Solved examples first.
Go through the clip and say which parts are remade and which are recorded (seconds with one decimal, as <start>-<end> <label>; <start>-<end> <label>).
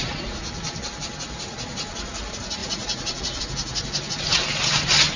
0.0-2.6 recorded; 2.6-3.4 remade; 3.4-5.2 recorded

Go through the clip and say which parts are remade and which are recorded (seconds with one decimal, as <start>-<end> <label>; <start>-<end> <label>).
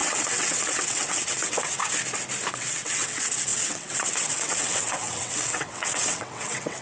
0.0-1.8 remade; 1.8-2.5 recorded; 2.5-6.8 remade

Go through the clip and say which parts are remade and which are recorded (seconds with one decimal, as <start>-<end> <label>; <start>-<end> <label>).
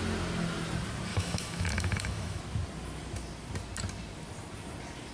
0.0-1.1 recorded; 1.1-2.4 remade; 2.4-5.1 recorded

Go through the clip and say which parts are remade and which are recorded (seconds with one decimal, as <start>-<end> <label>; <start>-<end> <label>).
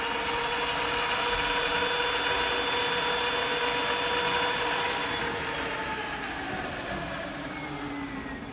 0.0-8.5 recorded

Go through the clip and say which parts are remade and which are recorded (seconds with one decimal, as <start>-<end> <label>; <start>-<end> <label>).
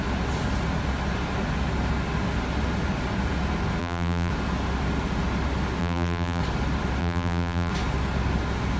0.0-3.8 recorded; 3.8-4.3 remade; 4.3-5.8 recorded; 5.8-6.4 remade; 6.4-7.0 recorded; 7.0-7.7 remade; 7.7-8.8 recorded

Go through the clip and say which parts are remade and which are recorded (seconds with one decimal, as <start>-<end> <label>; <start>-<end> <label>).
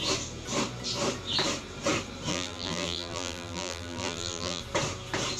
0.0-2.3 recorded; 2.3-4.6 remade; 4.6-5.4 recorded